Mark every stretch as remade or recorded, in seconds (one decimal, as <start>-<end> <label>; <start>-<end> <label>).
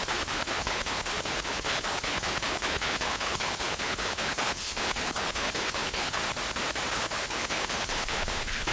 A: 0.0-6.2 remade; 6.2-6.9 recorded; 6.9-8.7 remade